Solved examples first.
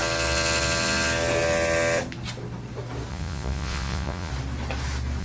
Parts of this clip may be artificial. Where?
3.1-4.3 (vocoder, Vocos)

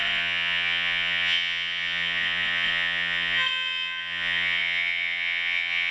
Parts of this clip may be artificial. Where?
0.0-5.9 (vocoder, Vocos)

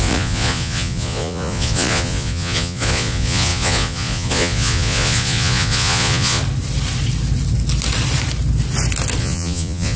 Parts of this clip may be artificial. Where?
0.0-6.4 (vocoder, Vocos); 9.2-10.0

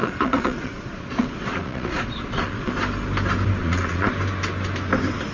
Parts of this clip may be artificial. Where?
0.0-2.7 (vocoder, Vocos); 3.6-4.1